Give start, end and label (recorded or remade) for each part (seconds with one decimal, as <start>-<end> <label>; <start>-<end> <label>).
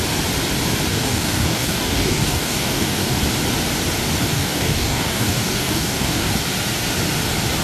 0.0-0.9 recorded; 0.9-3.2 remade; 3.2-4.3 recorded; 4.3-6.3 remade; 6.3-7.6 recorded